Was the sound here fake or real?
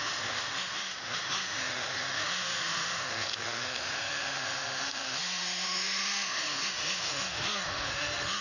fake